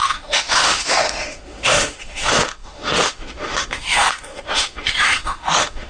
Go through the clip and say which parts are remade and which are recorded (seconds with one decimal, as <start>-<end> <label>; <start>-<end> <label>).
0.0-5.9 remade